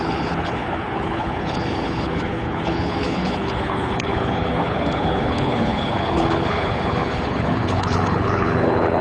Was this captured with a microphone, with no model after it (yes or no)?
no